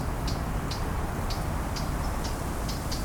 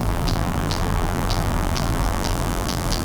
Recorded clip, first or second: first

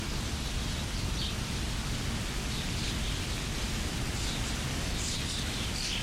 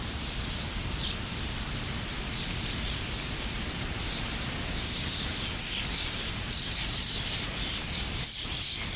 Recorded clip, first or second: first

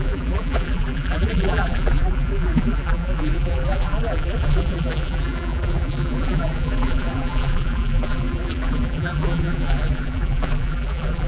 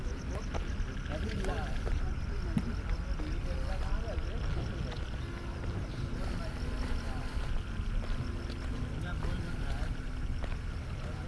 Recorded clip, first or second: second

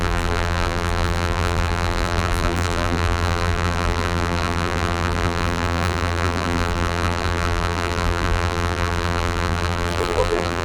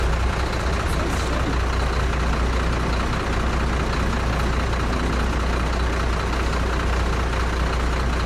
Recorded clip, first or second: second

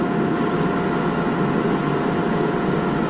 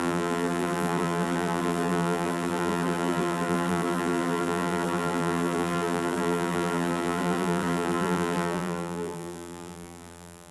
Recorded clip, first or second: first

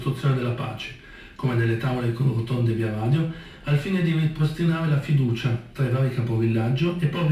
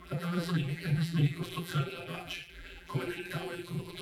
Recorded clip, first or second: first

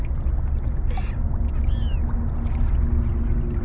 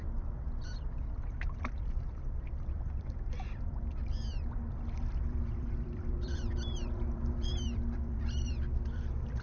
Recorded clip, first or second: first